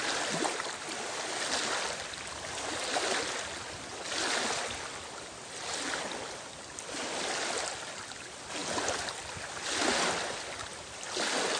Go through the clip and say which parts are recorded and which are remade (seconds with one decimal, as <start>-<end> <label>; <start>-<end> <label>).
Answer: 0.0-11.6 recorded